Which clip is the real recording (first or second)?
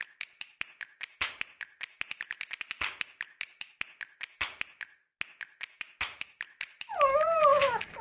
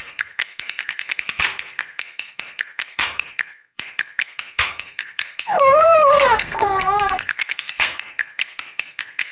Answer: first